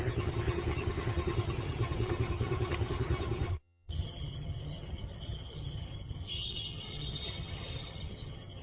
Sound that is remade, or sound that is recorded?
remade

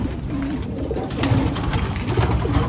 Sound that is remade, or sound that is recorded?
recorded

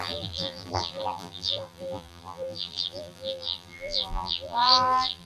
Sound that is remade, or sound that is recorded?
remade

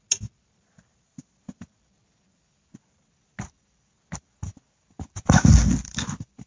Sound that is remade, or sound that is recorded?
recorded